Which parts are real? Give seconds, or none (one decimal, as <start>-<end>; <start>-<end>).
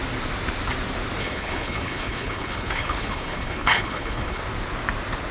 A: 0.0-1.2; 4.4-5.3